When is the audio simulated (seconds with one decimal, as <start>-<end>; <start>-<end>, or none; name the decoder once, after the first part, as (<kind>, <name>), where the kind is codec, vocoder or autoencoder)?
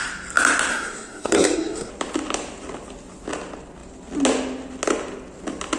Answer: 0.7-1.9 (codec, SNAC)